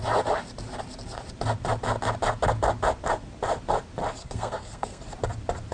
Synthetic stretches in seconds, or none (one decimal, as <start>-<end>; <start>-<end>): 4.2-5.0